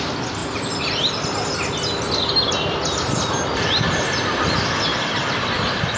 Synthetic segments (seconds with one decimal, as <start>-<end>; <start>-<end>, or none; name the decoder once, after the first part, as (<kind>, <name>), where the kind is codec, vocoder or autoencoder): none